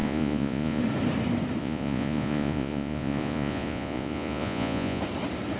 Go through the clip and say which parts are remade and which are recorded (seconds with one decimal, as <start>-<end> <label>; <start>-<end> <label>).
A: 0.0-0.8 remade; 0.8-1.6 recorded; 1.6-5.0 remade; 5.0-5.6 recorded